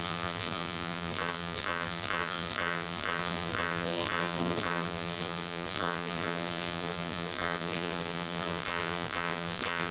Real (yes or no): no